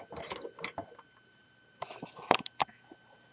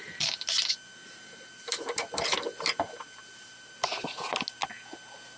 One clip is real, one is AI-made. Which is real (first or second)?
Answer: second